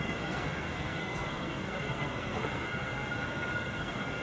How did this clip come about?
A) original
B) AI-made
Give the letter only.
B